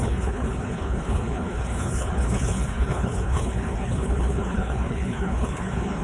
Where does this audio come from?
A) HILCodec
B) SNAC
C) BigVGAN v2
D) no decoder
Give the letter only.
A